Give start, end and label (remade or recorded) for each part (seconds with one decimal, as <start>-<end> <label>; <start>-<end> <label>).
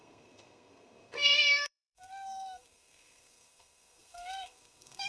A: 0.0-5.1 remade